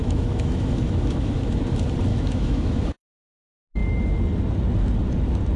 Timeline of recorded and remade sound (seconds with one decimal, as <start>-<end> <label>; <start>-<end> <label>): 0.0-1.6 remade; 1.6-2.1 recorded; 2.1-3.3 remade; 3.3-5.6 recorded